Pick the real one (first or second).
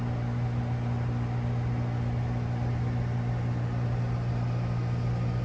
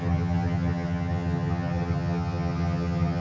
first